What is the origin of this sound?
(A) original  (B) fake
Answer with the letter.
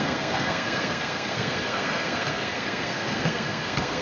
B